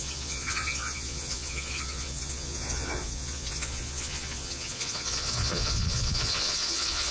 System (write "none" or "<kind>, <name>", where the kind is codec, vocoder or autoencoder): vocoder, Vocos